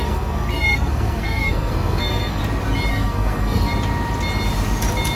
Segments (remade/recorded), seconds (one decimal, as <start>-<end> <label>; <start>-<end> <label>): 0.0-2.4 remade; 2.4-2.9 recorded; 2.9-3.7 remade; 3.7-5.2 recorded